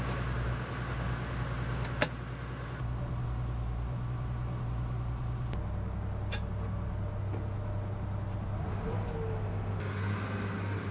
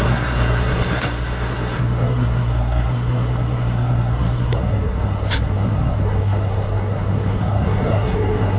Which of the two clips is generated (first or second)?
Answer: second